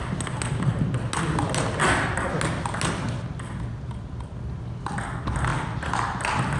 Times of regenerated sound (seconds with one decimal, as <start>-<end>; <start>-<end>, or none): none

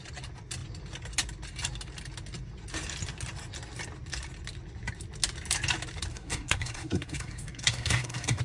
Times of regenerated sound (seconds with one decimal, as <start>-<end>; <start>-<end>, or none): 6.1-8.4

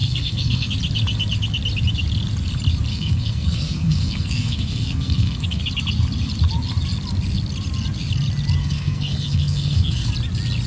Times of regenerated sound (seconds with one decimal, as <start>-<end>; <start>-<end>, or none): 0.0-0.7; 2.9-5.6; 8.6-10.1

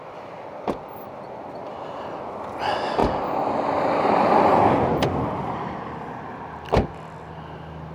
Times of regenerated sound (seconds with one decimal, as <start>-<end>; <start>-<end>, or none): none

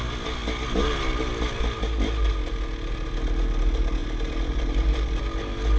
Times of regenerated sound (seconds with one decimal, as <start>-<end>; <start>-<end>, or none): 4.0-5.2